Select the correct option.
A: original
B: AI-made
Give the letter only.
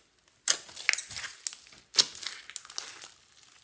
A